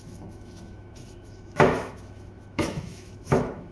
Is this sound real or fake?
fake